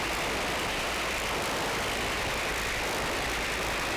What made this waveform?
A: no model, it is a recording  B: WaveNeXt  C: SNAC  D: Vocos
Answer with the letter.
A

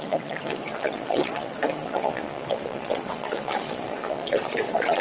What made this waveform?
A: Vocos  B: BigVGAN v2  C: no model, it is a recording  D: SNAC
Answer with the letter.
A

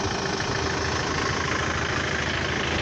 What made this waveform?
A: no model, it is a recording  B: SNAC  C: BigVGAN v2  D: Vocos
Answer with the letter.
A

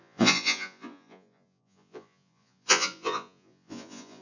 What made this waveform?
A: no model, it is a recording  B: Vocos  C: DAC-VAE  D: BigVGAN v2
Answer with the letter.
B